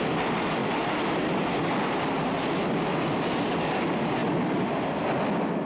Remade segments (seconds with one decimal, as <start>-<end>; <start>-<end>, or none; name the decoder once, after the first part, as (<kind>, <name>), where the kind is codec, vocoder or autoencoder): none